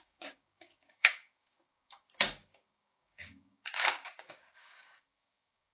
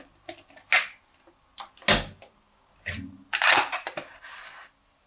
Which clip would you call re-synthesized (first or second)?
first